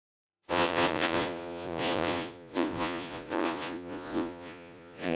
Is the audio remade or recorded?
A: remade